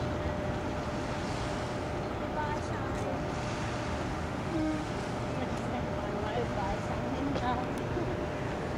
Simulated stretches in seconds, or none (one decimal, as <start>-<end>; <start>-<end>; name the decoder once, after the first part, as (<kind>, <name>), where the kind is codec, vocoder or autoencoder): 4.1-4.9 (autoencoder, DAC-VAE)